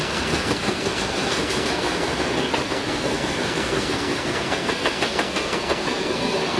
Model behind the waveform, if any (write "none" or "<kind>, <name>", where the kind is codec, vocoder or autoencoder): codec, SNAC